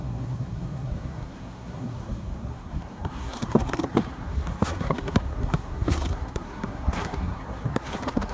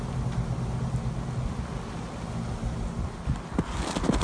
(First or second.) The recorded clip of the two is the second